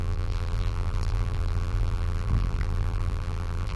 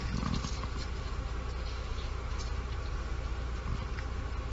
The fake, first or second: first